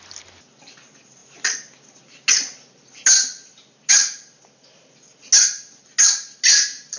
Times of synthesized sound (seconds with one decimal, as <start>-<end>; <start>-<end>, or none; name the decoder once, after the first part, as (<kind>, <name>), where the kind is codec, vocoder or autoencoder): none

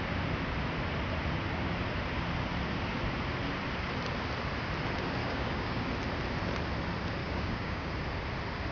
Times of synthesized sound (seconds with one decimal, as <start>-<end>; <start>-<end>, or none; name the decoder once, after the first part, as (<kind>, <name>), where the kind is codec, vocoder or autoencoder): 5.2-5.9 (codec, DAC); 7.2-7.9

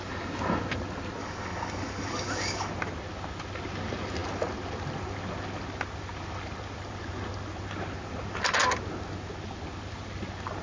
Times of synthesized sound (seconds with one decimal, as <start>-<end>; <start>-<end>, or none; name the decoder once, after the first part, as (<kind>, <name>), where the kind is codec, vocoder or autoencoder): 1.2-2.7 (codec, DAC)